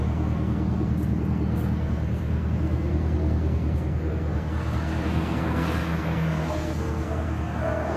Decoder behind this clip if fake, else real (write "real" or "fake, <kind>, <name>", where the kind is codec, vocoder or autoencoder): fake, codec, SNAC